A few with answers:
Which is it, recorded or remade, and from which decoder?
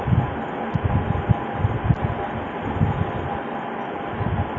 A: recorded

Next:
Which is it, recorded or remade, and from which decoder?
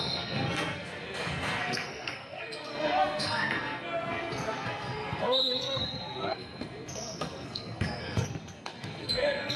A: remade, codec, SNAC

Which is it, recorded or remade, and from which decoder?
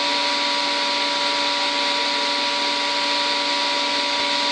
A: recorded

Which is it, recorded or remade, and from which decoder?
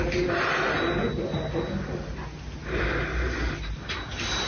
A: recorded